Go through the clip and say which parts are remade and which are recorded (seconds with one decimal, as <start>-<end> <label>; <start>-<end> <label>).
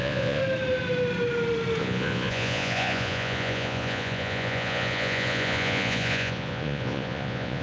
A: 0.0-0.4 remade; 0.4-1.8 recorded; 1.8-7.6 remade